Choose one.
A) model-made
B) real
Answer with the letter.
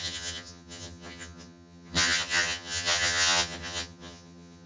A